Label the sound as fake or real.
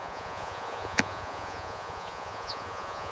fake